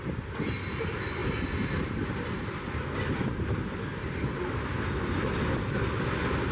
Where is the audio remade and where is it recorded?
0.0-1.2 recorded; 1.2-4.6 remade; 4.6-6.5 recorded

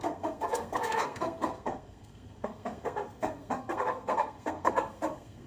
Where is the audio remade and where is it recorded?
0.0-5.5 remade

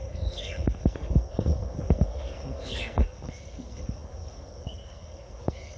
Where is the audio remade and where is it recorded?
0.0-5.8 remade

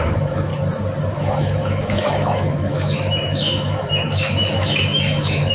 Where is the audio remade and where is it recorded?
0.0-0.5 remade; 0.5-1.1 recorded; 1.1-5.5 remade

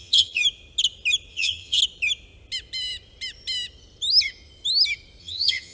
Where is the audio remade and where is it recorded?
0.0-0.4 remade; 0.4-1.3 recorded; 1.3-1.8 remade; 1.8-5.2 recorded; 5.2-5.7 remade

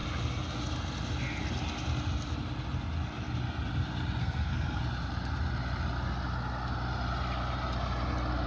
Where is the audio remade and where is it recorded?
0.0-4.2 recorded; 4.2-4.8 remade; 4.8-8.5 recorded

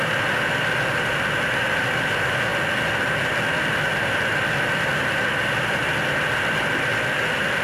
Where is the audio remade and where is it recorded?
0.0-7.6 recorded

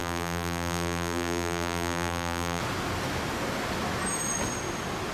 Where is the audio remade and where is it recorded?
0.0-2.6 remade; 2.6-5.1 recorded